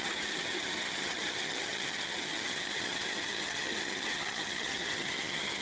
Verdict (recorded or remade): remade